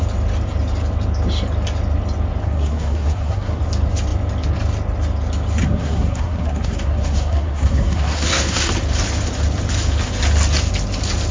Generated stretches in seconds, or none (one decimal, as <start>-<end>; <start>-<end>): 2.4-3.6; 5.6-8.7